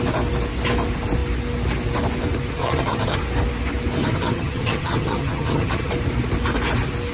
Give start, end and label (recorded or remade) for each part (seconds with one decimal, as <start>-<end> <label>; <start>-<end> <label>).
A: 0.0-2.6 recorded; 2.6-3.2 remade; 3.2-4.0 recorded; 4.0-5.9 remade; 5.9-7.1 recorded